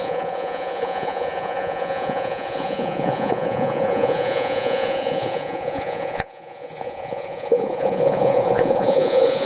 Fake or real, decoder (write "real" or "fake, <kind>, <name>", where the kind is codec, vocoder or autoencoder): fake, vocoder, Vocos